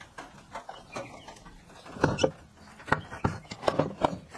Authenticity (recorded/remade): recorded